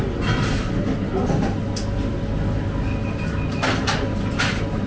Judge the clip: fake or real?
real